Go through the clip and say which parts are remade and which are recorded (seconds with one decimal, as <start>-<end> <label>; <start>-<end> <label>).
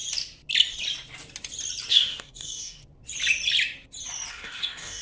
0.0-1.9 recorded; 1.9-2.8 remade; 2.8-4.3 recorded; 4.3-5.0 remade